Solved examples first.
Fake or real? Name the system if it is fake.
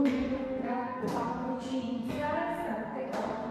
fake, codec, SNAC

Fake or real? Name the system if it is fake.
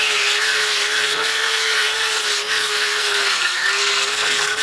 fake, codec, SNAC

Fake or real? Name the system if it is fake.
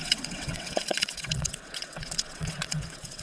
fake, vocoder, WaveNeXt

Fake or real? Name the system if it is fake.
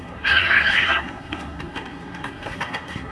fake, codec, SNAC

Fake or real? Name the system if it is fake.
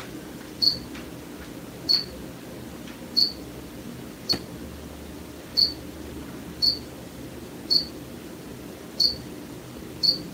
real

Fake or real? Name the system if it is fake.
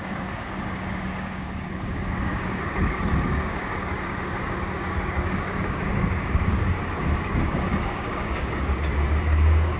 fake, codec, DAC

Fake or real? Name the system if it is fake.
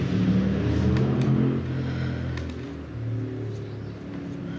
real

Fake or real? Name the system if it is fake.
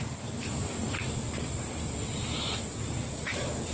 real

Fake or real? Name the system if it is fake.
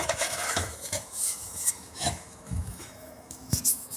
fake, autoencoder, DAC-VAE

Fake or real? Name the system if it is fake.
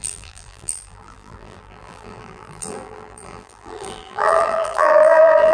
fake, vocoder, BigVGAN v2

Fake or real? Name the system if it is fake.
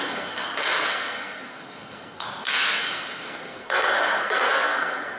fake, codec, SNAC